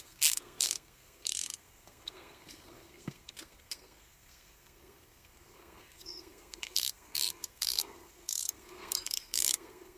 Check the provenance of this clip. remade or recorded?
remade